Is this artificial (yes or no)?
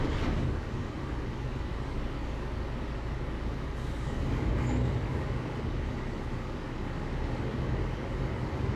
yes